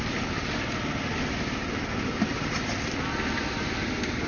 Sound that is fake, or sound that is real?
real